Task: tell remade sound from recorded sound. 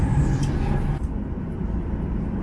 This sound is recorded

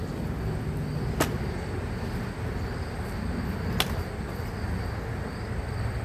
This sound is recorded